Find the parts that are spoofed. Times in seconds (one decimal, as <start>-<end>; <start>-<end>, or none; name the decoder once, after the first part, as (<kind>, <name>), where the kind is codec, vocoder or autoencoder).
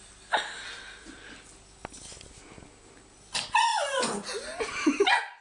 none